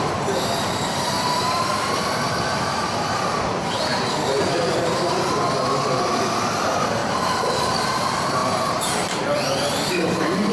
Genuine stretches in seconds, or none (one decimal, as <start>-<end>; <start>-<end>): 3.9-4.4; 7.0-7.6